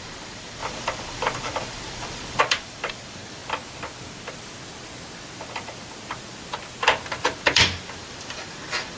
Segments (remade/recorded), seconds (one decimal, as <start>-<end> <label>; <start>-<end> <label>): 0.0-3.4 remade; 3.4-7.4 recorded; 7.4-9.0 remade